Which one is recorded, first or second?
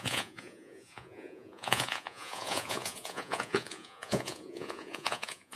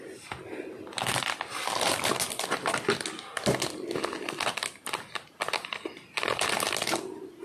second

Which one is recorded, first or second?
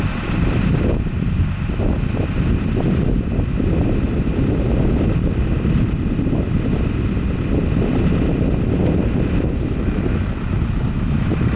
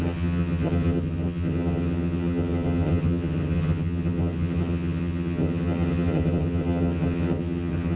first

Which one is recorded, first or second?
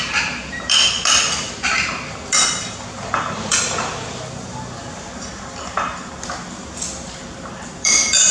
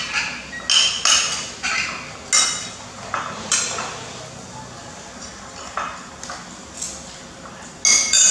second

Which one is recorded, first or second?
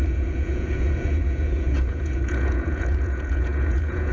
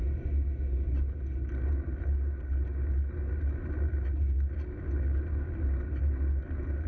second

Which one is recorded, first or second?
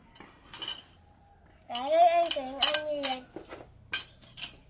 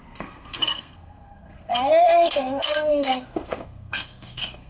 first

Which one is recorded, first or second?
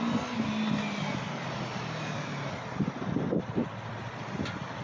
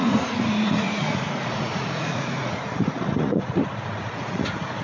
first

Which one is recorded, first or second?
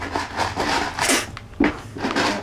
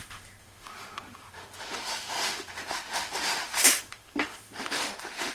first